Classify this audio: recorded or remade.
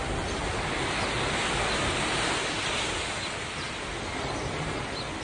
recorded